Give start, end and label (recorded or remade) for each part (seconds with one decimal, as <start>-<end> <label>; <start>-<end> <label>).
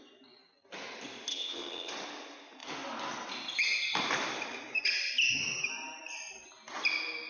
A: 0.0-1.3 recorded; 1.3-1.9 remade; 1.9-7.3 recorded